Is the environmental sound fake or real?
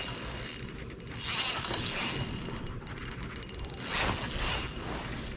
real